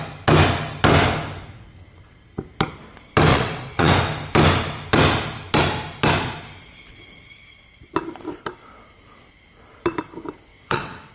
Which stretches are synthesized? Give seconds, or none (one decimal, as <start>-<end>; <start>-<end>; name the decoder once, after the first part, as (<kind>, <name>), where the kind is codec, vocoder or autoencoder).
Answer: 3.3-3.9 (vocoder, WaveNeXt); 10.5-11.1